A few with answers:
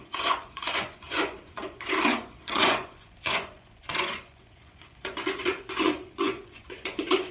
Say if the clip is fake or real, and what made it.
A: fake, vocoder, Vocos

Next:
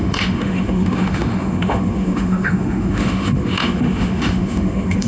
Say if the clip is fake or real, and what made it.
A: fake, autoencoder, DAC-VAE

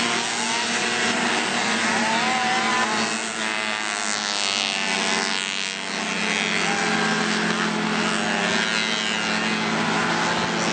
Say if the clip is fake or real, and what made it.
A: real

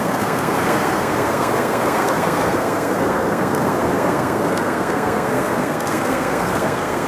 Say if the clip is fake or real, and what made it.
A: fake, codec, SNAC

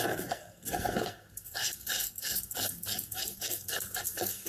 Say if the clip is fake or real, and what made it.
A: fake, codec, SNAC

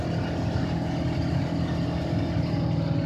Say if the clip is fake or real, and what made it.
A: real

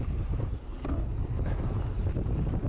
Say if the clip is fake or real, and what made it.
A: real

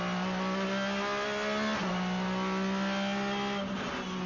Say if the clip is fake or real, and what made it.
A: real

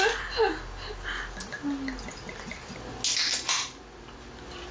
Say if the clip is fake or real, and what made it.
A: real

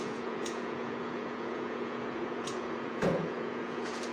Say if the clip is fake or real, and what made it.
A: fake, vocoder, Vocos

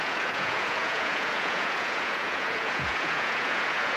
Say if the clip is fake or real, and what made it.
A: fake, vocoder, Vocos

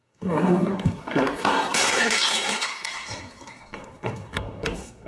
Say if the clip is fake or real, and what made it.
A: fake, codec, SNAC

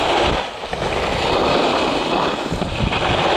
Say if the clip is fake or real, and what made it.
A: real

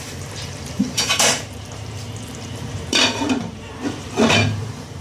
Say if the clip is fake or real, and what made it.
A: fake, vocoder, BigVGAN v2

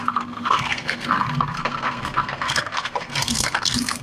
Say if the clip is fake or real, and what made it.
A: fake, codec, SNAC